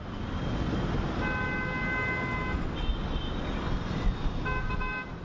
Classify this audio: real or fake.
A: real